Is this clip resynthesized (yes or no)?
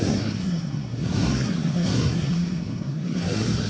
yes